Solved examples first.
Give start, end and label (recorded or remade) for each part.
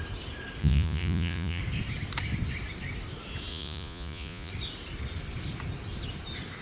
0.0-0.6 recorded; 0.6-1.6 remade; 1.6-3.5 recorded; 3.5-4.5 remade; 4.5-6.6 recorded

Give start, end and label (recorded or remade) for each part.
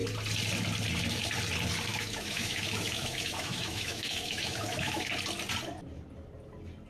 0.0-1.9 recorded; 1.9-5.1 remade; 5.1-6.9 recorded